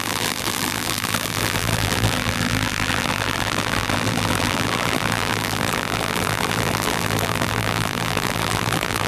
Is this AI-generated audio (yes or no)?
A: yes